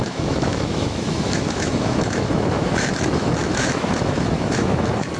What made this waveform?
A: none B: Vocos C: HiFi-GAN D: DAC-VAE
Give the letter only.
D